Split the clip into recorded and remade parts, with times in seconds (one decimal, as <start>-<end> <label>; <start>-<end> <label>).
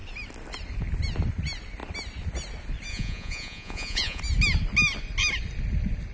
0.0-2.9 recorded; 2.9-4.2 remade; 4.2-6.1 recorded